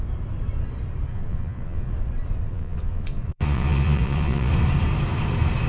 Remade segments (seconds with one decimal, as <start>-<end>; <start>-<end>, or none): 1.1-1.9; 2.5-4.5